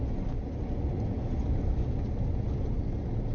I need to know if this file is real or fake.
real